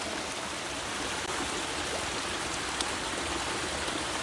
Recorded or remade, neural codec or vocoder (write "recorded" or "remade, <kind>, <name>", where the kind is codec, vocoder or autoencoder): recorded